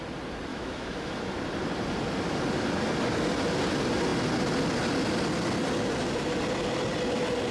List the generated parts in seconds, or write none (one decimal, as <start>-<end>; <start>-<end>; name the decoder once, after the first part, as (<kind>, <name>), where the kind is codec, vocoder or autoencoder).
0.5-1.2 (autoencoder, DAC-VAE)